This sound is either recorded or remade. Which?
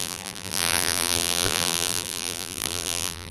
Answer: remade